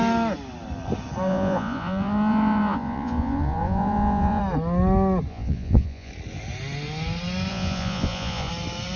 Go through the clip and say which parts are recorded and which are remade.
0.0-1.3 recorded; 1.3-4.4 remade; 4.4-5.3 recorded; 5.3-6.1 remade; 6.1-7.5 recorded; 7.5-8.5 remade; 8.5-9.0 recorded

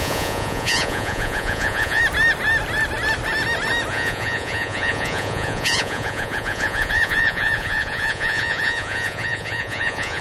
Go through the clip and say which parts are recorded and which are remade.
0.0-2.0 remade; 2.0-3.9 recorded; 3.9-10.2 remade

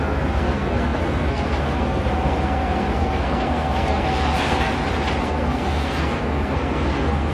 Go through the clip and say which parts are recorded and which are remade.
0.0-4.7 remade; 4.7-5.2 recorded; 5.2-7.3 remade

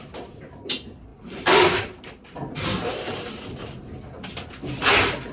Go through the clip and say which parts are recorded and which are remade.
0.0-5.3 recorded

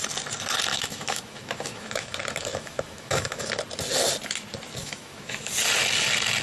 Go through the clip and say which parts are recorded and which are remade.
0.0-0.7 recorded; 0.7-3.5 remade; 3.5-4.8 recorded; 4.8-5.5 remade; 5.5-6.4 recorded

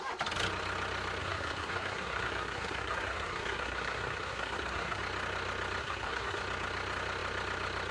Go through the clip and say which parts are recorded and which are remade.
0.0-1.2 recorded; 1.2-5.0 remade; 5.0-5.8 recorded; 5.8-6.4 remade; 6.4-7.9 recorded